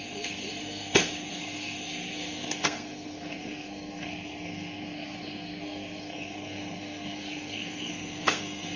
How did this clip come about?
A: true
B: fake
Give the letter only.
B